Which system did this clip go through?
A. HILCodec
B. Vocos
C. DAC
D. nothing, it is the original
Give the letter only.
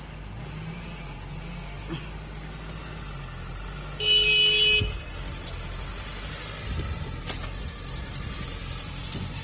D